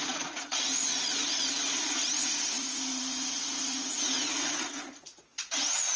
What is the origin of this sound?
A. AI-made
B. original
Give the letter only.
A